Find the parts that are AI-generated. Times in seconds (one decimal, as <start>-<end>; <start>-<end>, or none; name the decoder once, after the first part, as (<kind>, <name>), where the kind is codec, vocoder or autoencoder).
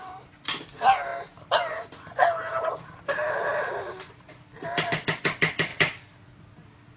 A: 0.0-1.1 (vocoder, BigVGAN v2); 2.8-5.7